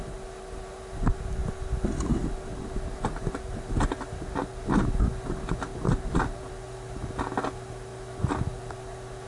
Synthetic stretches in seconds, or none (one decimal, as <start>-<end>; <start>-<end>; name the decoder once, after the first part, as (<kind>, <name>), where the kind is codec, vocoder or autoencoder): none